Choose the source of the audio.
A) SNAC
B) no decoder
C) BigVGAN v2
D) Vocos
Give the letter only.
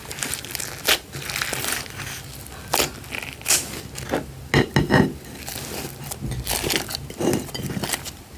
B